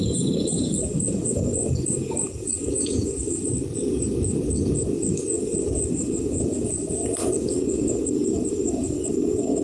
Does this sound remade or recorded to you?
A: remade